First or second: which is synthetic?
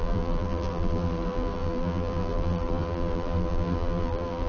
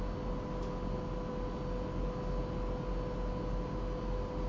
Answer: first